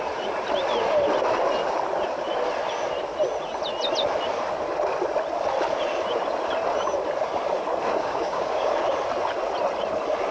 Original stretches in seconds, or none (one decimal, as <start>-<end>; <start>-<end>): 0.0-8.0; 8.7-10.3

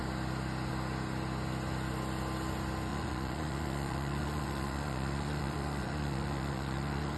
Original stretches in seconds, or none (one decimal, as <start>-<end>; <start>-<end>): 0.0-2.9

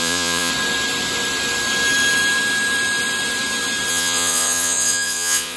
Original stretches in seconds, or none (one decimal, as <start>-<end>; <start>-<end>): 0.5-3.9

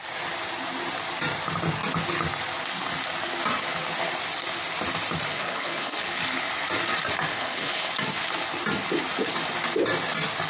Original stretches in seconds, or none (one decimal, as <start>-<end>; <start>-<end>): 0.0-5.3; 6.2-7.3; 7.9-10.5

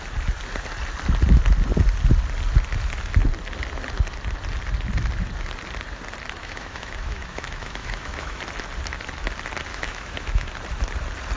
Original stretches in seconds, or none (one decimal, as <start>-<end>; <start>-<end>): 0.0-6.4; 8.4-9.7; 10.5-11.4